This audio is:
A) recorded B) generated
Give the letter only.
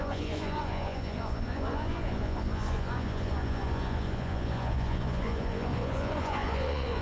B